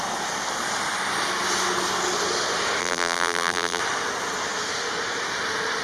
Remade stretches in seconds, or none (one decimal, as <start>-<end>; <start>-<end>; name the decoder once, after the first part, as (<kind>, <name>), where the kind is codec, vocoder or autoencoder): 2.8-3.8 (vocoder, BigVGAN v2)